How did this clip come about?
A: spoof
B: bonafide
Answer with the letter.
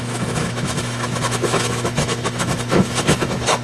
A